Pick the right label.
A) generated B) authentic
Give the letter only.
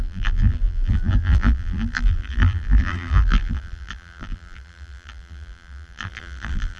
A